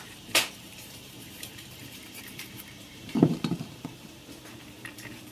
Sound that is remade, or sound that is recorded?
remade